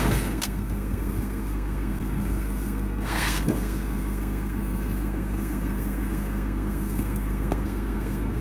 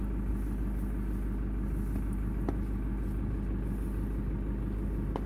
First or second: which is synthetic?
first